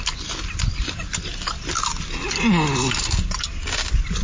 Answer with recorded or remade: recorded